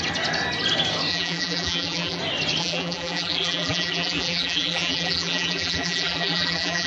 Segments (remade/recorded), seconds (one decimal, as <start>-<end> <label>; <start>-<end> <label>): 0.0-1.1 recorded; 1.1-2.2 remade; 2.2-2.6 recorded; 2.6-6.9 remade